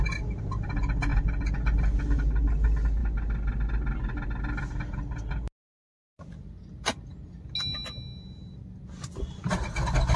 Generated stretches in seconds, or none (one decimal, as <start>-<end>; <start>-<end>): none